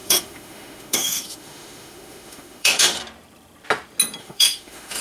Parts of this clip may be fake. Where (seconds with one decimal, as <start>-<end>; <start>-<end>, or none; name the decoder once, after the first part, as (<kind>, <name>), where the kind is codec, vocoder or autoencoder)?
0.0-3.0 (autoencoder, DAC-VAE); 4.2-5.0